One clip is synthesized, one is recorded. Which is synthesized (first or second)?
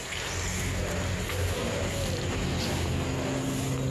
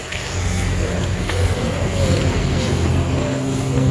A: second